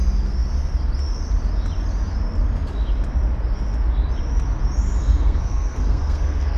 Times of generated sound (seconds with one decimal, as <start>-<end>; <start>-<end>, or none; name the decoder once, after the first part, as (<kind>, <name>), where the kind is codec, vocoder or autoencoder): 5.0-6.6 (codec, SNAC)